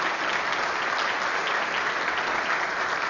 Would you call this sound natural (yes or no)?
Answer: yes